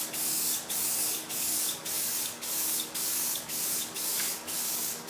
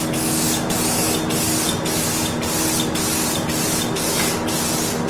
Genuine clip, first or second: second